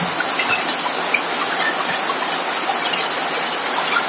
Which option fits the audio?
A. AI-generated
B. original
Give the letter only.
B